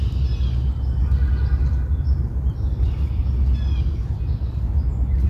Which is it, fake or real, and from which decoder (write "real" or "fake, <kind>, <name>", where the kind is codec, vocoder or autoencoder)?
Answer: real